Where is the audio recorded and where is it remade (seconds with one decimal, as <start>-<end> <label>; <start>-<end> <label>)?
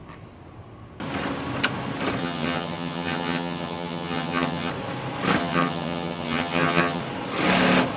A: 0.0-2.2 recorded; 2.2-4.7 remade; 4.7-5.4 recorded; 5.4-7.0 remade; 7.0-8.0 recorded